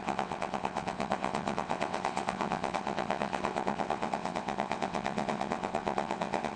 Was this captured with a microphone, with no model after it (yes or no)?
no